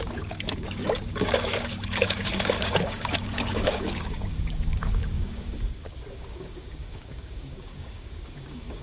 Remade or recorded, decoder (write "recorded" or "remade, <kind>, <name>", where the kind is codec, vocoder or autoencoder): remade, codec, DAC